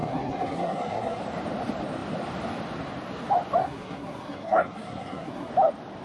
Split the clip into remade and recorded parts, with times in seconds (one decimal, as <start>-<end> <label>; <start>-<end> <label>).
0.0-1.2 remade; 1.2-3.6 recorded; 3.6-5.5 remade; 5.5-6.0 recorded